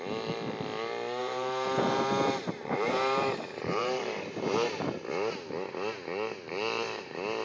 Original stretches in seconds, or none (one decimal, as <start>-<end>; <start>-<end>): 0.0-1.2; 5.0-7.4